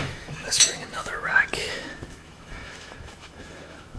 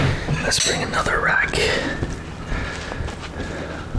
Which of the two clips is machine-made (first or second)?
first